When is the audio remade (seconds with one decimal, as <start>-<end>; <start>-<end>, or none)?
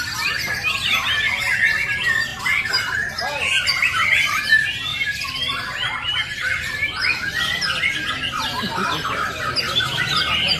2.3-3.2; 3.8-4.4; 4.9-9.6